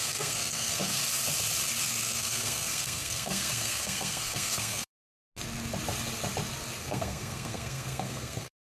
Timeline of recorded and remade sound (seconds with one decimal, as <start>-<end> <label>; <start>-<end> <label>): 0.0-1.0 remade; 1.0-1.8 recorded; 1.8-5.0 remade; 5.0-6.8 recorded; 6.8-8.7 remade

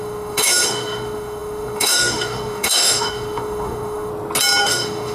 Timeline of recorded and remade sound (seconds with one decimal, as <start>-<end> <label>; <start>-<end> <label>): 0.0-4.1 remade; 4.1-4.6 recorded; 4.6-5.1 remade

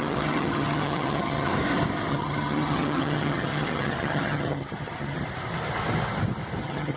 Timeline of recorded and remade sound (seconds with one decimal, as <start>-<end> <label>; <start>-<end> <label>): 0.0-1.5 remade; 1.5-2.1 recorded; 2.1-5.2 remade; 5.2-6.6 recorded; 6.6-7.0 remade